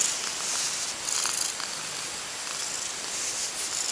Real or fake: real